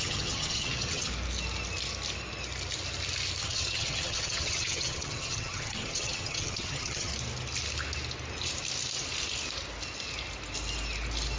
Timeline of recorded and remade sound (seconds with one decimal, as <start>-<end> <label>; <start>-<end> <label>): 0.0-1.1 remade; 1.1-3.4 recorded; 3.4-7.1 remade; 7.1-11.4 recorded